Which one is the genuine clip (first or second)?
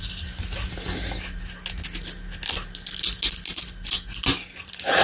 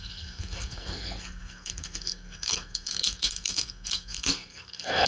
first